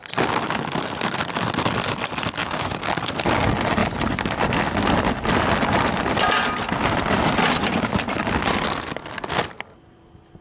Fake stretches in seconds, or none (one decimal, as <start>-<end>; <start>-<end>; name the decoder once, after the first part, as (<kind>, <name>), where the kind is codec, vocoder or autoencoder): 2.4-3.0 (codec, DAC)